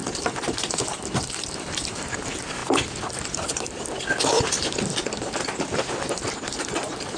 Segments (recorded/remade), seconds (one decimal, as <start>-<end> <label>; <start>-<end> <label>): 0.0-0.7 recorded; 0.7-2.6 remade; 2.6-6.3 recorded; 6.3-7.2 remade

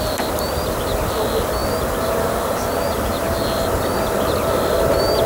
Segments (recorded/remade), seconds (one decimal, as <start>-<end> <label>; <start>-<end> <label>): 0.0-5.3 recorded

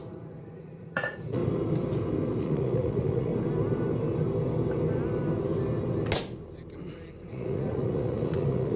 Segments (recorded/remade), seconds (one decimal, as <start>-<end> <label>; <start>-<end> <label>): 0.0-1.4 remade; 1.4-2.4 recorded; 2.4-3.3 remade; 3.3-7.3 recorded; 7.3-8.8 remade

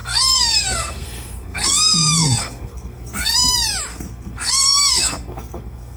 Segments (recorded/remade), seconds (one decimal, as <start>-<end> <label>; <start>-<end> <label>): 0.0-3.5 remade; 3.5-3.9 recorded; 3.9-6.0 remade

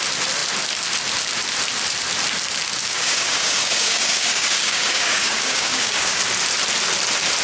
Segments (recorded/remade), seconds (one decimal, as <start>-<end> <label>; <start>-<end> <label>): 0.0-2.8 recorded; 2.8-6.2 remade; 6.2-7.4 recorded

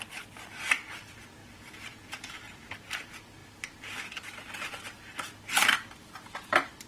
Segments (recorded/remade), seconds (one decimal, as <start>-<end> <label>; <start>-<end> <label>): 0.0-1.4 recorded; 1.4-2.3 remade; 2.3-6.9 recorded